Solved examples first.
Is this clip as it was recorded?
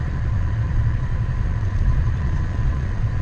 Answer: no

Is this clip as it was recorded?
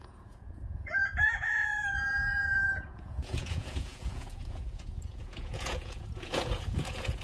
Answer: no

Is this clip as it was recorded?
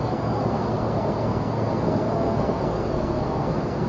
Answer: no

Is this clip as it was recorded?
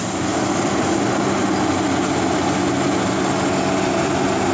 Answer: yes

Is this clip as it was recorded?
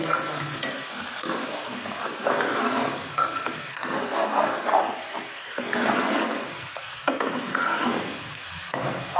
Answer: no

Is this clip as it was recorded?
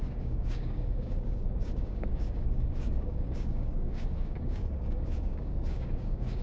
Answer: no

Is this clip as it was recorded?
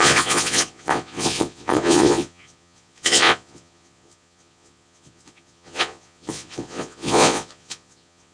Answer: no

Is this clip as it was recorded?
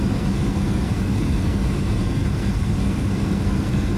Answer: no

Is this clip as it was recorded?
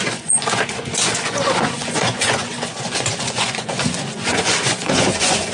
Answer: no